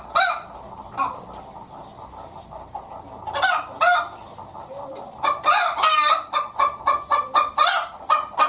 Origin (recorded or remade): recorded